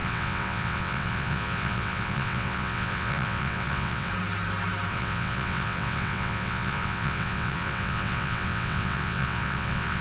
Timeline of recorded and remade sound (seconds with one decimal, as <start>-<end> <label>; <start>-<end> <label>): 0.0-4.1 remade; 4.1-4.9 recorded; 4.9-10.0 remade